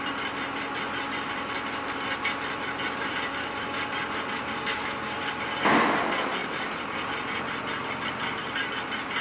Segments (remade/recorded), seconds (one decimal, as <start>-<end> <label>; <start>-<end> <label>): 0.0-3.3 recorded; 3.3-5.3 remade; 5.3-9.2 recorded